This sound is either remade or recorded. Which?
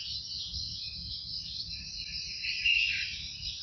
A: recorded